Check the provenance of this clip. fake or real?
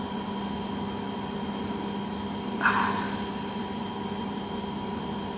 real